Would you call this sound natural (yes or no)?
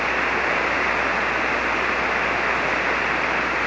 yes